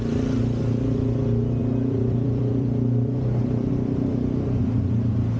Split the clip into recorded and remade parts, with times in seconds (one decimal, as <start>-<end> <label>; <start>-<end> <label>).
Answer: 0.0-1.6 recorded; 1.6-3.7 remade; 3.7-5.4 recorded